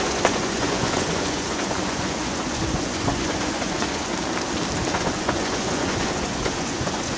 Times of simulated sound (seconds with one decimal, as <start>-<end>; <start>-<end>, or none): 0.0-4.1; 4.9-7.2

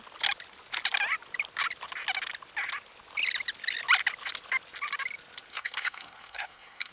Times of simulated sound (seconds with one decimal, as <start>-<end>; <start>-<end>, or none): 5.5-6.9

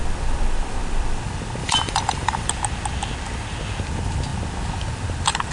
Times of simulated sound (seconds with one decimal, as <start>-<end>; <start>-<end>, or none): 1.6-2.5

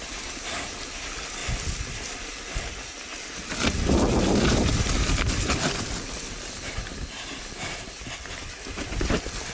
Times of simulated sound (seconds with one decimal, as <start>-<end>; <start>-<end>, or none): none

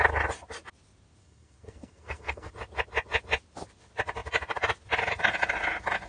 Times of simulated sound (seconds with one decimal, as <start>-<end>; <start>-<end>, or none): 1.2-2.5

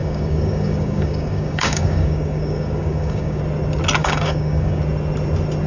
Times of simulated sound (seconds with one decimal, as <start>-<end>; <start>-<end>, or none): 0.0-3.4; 4.0-4.8

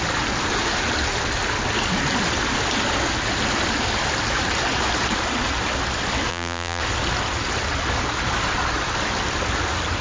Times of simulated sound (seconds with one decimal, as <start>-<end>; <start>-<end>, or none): 6.3-6.8

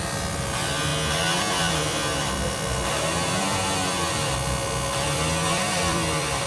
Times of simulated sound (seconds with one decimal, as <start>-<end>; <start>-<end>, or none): 0.0-0.9; 1.7-6.5